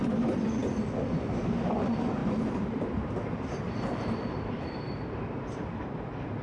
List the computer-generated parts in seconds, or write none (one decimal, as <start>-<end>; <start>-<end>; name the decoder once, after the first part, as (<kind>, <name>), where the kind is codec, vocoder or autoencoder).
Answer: 2.2-5.8 (vocoder, BigVGAN v2)